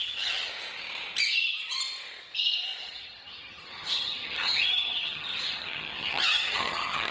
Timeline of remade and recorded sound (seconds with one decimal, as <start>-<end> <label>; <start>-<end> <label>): 0.0-0.5 remade; 0.5-2.8 recorded; 2.8-7.1 remade